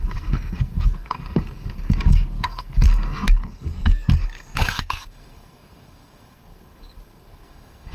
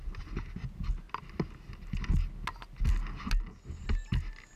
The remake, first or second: first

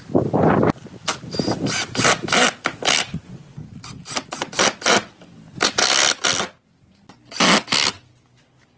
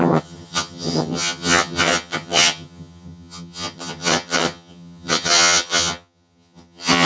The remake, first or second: second